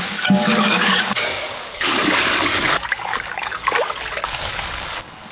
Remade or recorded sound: remade